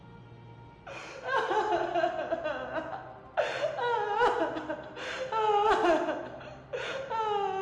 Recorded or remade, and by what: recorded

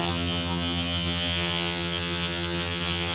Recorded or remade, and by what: remade, vocoder, HiFi-GAN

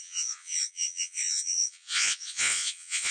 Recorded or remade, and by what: remade, vocoder, Vocos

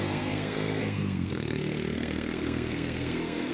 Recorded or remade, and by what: remade, codec, SNAC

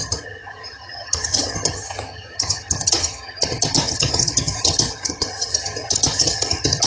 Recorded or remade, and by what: remade, vocoder, HiFi-GAN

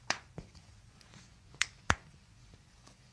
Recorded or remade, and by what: remade, vocoder, Vocos